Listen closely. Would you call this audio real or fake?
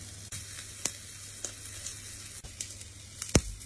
real